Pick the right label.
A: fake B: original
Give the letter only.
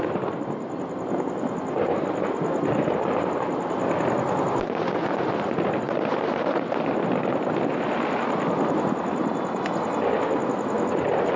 B